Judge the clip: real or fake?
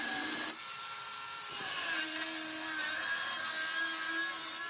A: real